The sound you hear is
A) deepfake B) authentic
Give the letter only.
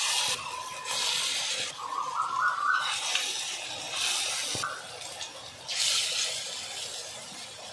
B